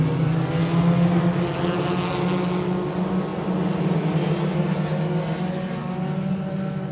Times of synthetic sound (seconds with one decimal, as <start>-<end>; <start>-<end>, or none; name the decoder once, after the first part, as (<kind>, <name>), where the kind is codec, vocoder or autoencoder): none

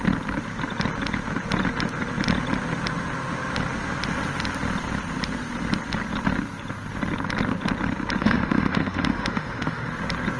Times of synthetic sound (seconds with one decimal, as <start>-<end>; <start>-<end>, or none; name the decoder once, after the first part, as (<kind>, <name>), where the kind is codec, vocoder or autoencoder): 8.2-9.9 (autoencoder, DAC-VAE)

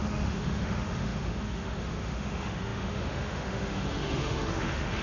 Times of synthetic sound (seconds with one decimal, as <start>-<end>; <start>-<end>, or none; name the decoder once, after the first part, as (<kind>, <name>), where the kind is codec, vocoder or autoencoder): 0.0-5.0 (autoencoder, DAC-VAE)

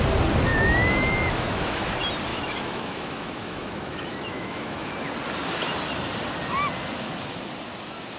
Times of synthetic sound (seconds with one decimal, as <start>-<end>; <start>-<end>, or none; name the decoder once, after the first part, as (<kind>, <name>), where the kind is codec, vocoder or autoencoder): 0.5-1.9 (autoencoder, DAC-VAE); 2.3-4.9